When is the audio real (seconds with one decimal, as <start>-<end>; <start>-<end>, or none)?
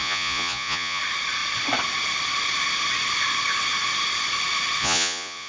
1.0-4.8